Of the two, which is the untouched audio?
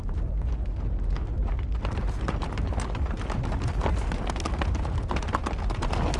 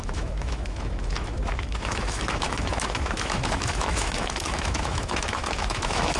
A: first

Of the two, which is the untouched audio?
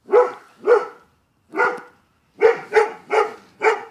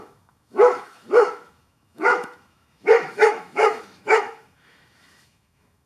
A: first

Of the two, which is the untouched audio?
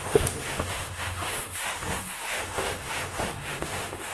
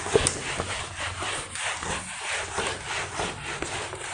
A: second